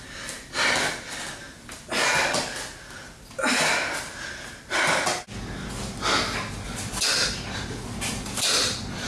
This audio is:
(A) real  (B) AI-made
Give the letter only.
A